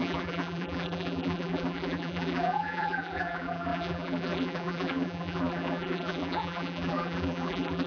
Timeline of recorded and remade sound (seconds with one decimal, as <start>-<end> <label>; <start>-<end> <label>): 0.0-7.9 remade